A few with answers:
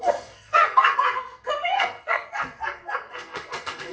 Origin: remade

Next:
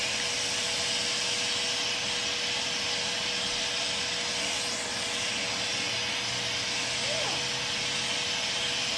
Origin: recorded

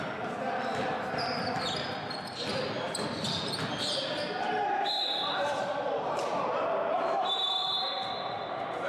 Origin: recorded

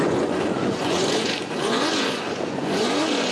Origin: remade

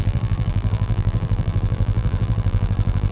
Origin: remade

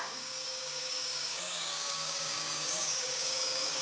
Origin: remade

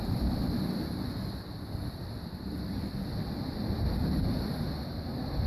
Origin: recorded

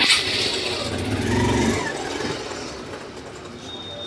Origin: recorded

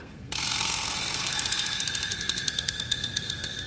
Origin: remade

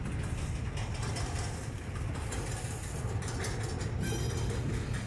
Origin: recorded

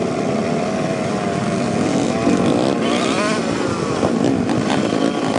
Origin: recorded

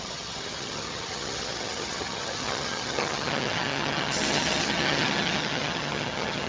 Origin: remade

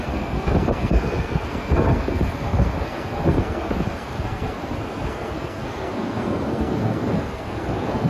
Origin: remade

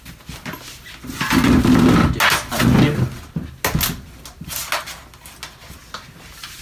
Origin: recorded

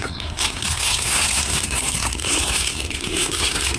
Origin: remade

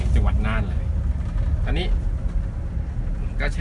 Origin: recorded